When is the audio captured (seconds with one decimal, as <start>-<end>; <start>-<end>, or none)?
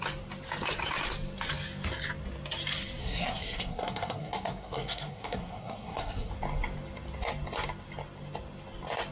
0.0-3.0; 6.3-9.1